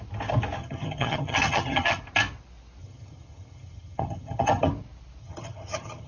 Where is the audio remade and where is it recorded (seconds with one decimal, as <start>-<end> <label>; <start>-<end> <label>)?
0.0-0.6 recorded; 0.6-2.0 remade; 2.0-2.8 recorded; 2.8-4.7 remade; 4.7-5.2 recorded; 5.2-6.1 remade